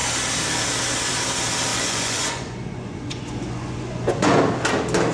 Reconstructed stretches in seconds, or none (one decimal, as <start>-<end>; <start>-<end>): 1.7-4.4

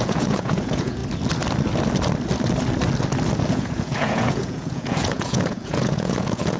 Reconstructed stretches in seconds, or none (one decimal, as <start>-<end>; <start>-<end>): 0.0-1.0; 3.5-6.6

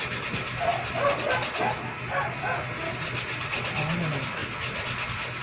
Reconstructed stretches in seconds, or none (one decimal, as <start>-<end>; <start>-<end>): none

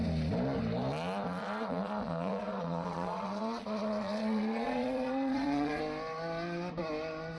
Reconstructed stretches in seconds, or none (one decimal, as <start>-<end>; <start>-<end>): 1.4-5.8

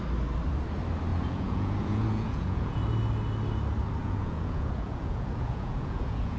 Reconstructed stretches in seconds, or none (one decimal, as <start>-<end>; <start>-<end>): 1.1-2.8; 4.0-6.4